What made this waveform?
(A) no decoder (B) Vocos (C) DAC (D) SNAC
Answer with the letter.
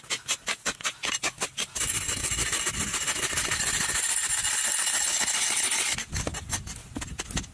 A